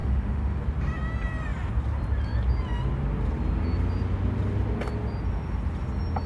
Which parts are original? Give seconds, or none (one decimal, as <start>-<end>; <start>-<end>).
0.6-6.3